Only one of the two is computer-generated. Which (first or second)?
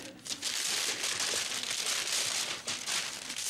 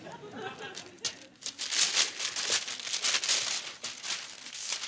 first